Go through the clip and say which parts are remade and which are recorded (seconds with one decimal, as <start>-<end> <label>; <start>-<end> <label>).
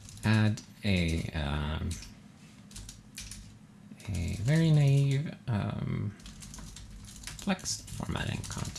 0.0-0.7 recorded; 0.7-2.1 remade; 2.1-7.6 recorded; 7.6-8.4 remade; 8.4-8.8 recorded